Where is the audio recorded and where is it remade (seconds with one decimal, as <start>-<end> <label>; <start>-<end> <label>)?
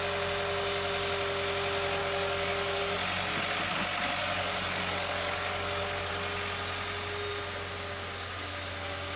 0.0-2.0 recorded; 2.0-2.8 remade; 2.8-4.2 recorded; 4.2-6.1 remade; 6.1-9.2 recorded